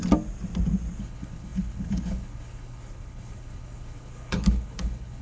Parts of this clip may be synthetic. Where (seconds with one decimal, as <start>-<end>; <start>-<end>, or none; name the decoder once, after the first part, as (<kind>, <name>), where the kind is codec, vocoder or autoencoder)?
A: 1.0-5.2 (codec, HILCodec)